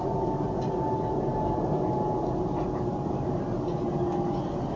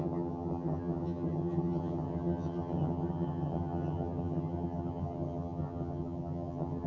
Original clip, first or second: first